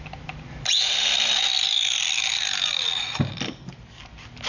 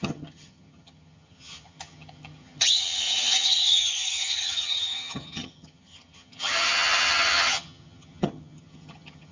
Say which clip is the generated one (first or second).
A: second